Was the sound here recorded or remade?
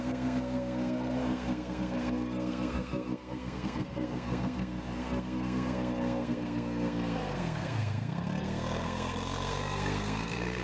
remade